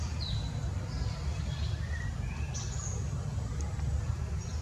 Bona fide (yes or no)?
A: yes